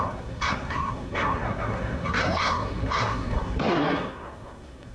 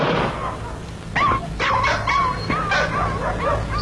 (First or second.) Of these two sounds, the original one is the second